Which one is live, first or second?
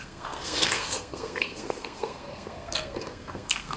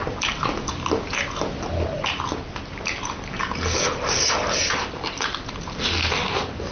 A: second